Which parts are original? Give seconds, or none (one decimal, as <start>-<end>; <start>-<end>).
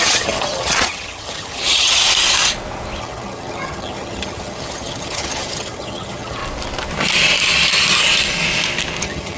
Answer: 2.0-3.0; 6.4-9.0